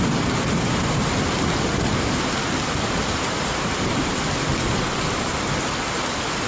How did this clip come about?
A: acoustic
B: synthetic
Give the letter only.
A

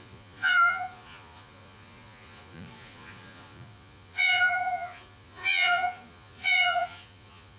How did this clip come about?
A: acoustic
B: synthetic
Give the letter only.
B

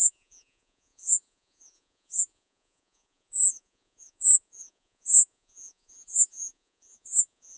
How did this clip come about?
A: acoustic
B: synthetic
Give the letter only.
B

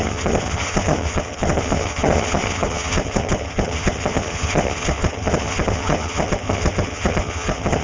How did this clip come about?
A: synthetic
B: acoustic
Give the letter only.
A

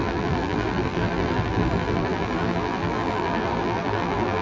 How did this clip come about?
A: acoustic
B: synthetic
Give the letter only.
B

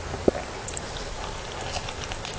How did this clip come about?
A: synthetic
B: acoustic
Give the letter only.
B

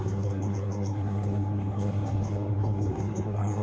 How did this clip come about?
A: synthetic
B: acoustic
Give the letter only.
A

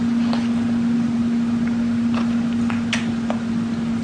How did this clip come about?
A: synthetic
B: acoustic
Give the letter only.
B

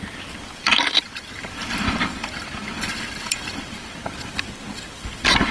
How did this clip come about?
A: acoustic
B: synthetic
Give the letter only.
B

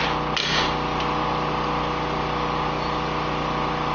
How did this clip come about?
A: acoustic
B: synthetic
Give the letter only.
A